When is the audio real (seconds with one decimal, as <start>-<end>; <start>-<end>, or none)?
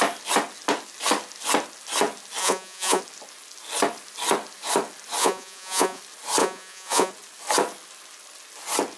0.0-2.4; 3.0-5.2; 6.0-6.4; 7.1-9.0